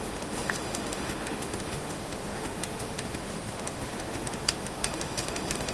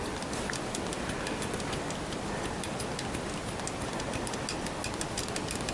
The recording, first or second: second